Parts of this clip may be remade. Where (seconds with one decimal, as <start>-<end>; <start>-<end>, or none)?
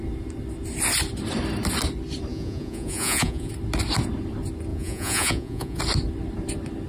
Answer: 2.3-3.5; 4.7-5.8